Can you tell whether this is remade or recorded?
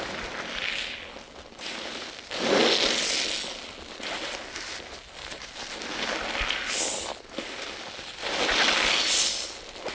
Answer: recorded